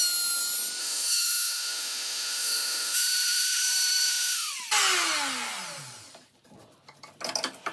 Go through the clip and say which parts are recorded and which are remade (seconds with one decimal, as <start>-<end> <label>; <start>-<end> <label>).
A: 0.0-0.8 recorded; 0.8-4.5 remade; 4.5-7.7 recorded

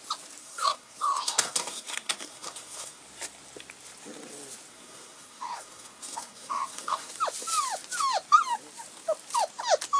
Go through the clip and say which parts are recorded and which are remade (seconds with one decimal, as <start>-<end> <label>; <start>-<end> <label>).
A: 0.0-0.4 recorded; 0.4-3.0 remade; 3.0-4.7 recorded; 4.7-7.1 remade; 7.1-10.0 recorded

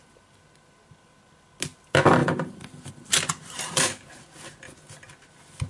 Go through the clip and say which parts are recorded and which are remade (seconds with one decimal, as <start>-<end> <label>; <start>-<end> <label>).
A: 0.0-2.2 recorded; 2.2-4.1 remade; 4.1-5.7 recorded

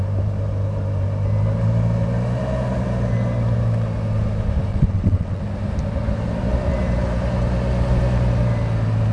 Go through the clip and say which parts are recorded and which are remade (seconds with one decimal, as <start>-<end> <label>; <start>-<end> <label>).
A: 0.0-4.7 recorded; 4.7-5.4 remade; 5.4-9.1 recorded